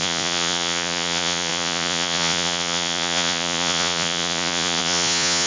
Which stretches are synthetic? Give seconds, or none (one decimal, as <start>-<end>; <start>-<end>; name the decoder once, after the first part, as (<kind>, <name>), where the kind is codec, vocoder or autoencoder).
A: 0.0-5.5 (vocoder, Vocos)